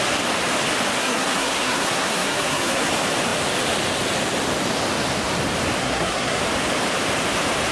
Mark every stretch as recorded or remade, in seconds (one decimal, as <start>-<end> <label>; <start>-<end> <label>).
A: 0.0-1.0 recorded; 1.0-2.9 remade; 2.9-5.8 recorded; 5.8-6.4 remade; 6.4-7.7 recorded